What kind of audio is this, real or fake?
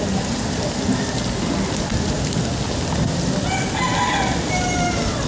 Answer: real